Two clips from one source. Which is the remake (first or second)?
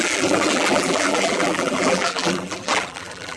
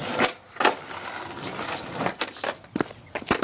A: first